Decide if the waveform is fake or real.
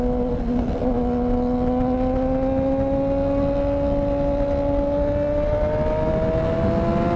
real